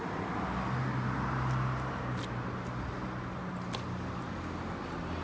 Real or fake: real